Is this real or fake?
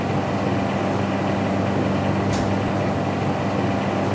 real